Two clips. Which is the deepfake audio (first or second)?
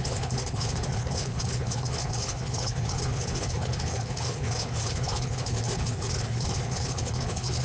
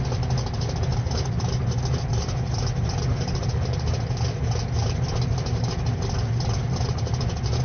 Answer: first